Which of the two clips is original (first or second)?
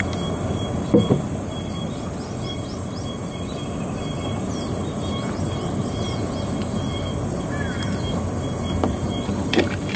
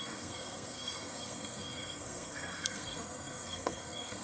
first